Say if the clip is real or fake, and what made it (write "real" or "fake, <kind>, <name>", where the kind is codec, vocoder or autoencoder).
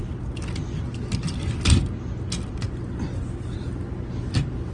real